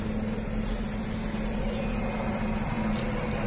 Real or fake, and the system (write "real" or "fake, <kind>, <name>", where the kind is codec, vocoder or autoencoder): real